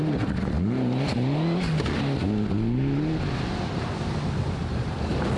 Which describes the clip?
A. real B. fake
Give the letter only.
A